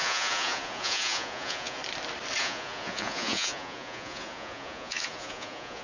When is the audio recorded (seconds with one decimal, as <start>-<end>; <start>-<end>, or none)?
1.8-2.4

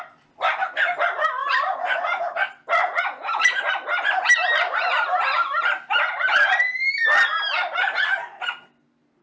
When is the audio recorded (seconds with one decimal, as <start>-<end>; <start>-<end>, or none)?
0.0-2.8; 3.6-9.2